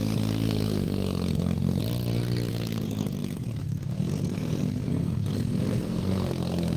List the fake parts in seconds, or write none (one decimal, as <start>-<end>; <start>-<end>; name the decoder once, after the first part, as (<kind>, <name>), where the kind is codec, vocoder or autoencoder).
0.0-1.8 (codec, SNAC); 2.5-6.8